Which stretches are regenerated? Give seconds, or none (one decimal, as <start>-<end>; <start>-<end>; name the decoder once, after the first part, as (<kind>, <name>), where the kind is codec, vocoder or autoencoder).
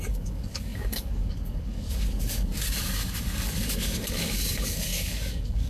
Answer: 0.0-5.7 (codec, DAC)